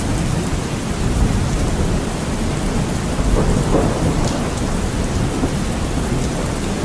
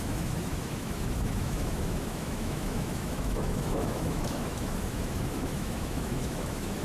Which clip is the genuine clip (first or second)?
first